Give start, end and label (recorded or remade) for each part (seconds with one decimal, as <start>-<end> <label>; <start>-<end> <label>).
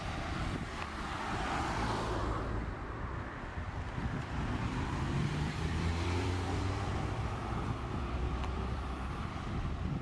0.0-10.0 remade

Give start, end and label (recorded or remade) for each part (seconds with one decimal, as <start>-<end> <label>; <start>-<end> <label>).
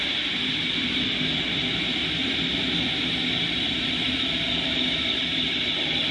0.0-6.1 recorded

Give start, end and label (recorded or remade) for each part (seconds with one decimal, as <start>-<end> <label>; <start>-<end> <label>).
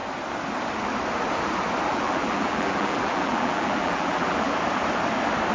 0.0-1.9 recorded; 1.9-4.6 remade; 4.6-5.5 recorded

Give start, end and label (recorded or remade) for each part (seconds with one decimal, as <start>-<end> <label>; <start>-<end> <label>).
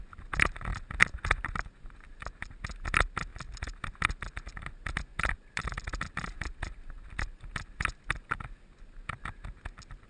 0.0-3.3 recorded; 3.3-3.9 remade; 3.9-5.1 recorded; 5.1-7.4 remade; 7.4-10.1 recorded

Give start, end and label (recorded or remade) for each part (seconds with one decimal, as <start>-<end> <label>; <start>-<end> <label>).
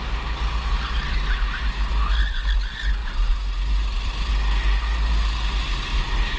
0.0-3.0 recorded; 3.0-4.3 remade; 4.3-6.4 recorded